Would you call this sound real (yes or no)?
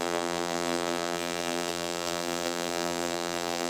no